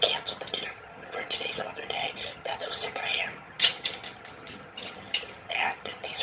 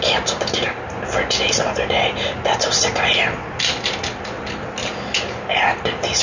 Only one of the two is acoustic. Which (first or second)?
second